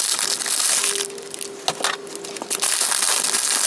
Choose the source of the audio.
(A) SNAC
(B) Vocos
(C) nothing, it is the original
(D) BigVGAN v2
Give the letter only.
C